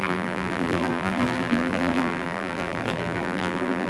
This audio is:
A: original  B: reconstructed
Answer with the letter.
B